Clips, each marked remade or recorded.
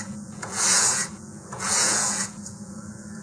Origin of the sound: remade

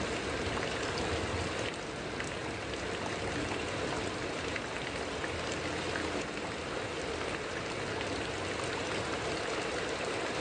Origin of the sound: recorded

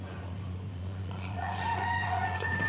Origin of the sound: remade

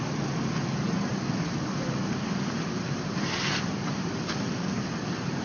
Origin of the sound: recorded